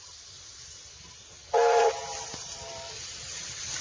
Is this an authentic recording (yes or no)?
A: no